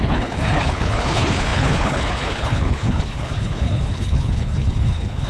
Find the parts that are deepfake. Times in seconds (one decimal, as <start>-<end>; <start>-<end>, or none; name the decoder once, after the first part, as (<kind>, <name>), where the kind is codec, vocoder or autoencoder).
0.0-5.3 (codec, HILCodec)

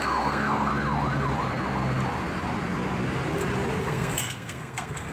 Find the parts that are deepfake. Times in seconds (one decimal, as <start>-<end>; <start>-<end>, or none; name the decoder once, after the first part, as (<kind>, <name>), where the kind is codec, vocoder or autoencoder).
0.0-0.7 (codec, SNAC); 3.8-5.1

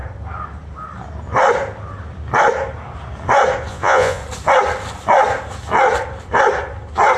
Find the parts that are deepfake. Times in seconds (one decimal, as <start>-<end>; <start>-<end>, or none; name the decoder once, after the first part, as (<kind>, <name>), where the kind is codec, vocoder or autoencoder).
3.7-4.2 (vocoder, Vocos)